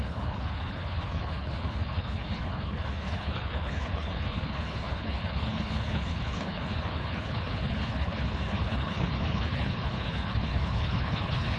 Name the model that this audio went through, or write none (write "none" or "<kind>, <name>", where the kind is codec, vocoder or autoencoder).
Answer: codec, HILCodec